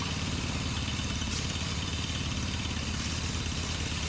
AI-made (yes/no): no